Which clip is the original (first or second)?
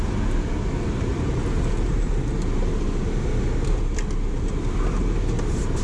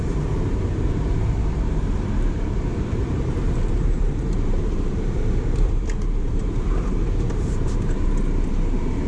first